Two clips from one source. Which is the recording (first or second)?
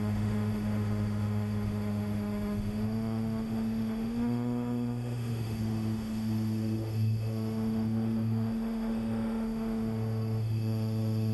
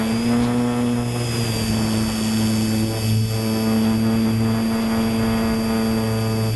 second